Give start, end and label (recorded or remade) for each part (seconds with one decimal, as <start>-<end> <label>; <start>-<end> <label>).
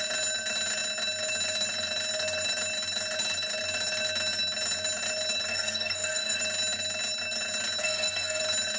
0.0-5.5 recorded; 5.5-6.4 remade; 6.4-7.8 recorded; 7.8-8.4 remade; 8.4-8.8 recorded